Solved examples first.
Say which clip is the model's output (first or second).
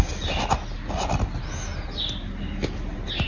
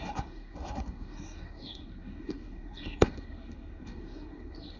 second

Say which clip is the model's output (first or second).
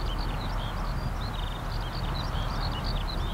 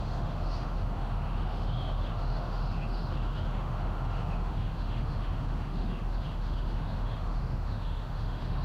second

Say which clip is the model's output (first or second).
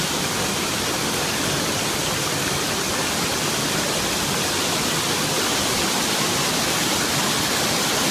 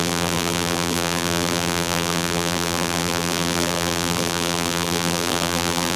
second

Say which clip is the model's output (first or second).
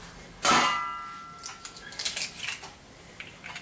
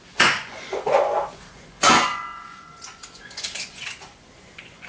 second